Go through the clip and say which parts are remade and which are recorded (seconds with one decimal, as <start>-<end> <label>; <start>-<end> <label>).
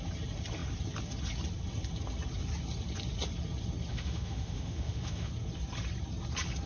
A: 0.0-3.9 recorded; 3.9-5.3 remade; 5.3-6.7 recorded